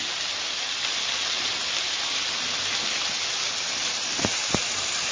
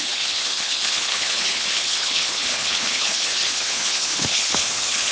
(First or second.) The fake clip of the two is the second